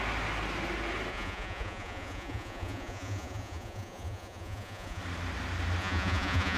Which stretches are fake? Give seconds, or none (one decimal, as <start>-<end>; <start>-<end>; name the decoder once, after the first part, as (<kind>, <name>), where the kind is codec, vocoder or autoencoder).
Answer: 1.1-5.0 (vocoder, Vocos); 5.8-6.6